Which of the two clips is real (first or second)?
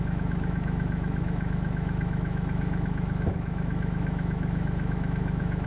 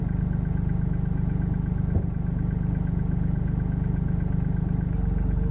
second